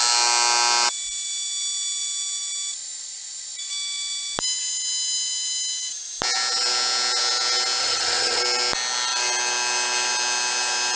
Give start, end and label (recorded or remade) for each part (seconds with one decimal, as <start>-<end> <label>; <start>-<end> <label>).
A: 0.0-7.8 recorded; 7.8-8.4 remade; 8.4-11.0 recorded